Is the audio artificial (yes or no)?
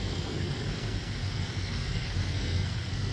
yes